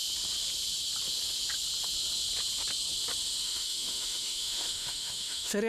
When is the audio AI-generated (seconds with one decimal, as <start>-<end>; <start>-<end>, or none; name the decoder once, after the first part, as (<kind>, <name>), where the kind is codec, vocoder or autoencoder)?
3.4-5.7 (autoencoder, DAC-VAE)